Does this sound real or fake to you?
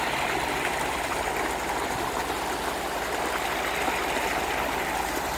real